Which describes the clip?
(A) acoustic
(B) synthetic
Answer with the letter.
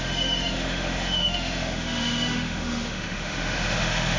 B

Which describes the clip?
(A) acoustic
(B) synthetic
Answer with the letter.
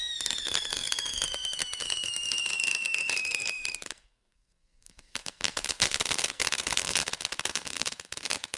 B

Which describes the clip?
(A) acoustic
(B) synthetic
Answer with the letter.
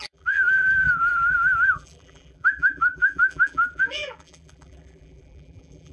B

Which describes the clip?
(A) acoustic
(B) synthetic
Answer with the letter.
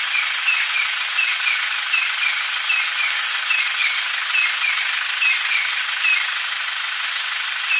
A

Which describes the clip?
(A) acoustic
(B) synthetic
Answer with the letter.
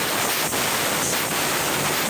A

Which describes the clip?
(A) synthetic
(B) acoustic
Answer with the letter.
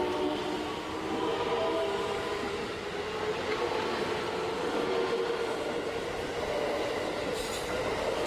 B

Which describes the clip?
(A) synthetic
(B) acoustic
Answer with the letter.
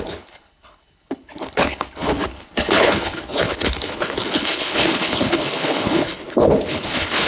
A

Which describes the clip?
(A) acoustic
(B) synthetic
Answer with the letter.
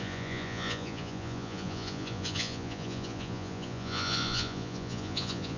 B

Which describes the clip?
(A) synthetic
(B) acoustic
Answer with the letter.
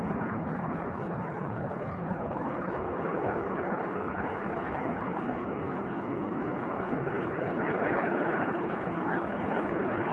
A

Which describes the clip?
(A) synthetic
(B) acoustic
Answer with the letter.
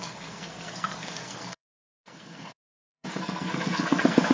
A